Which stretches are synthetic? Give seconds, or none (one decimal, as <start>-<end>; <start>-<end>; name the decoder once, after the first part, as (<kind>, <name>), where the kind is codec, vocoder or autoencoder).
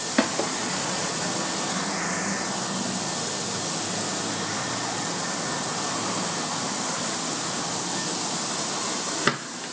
0.6-1.2 (vocoder, Vocos); 4.6-5.4